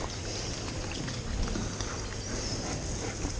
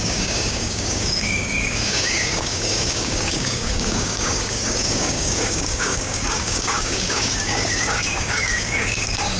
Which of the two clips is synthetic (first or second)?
second